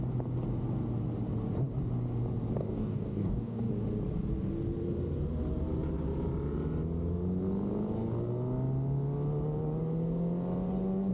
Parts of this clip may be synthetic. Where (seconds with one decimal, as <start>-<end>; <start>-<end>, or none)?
2.6-3.7